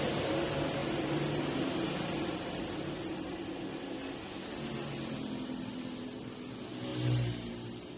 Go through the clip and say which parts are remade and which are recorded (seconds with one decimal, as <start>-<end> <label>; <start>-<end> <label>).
0.0-8.0 recorded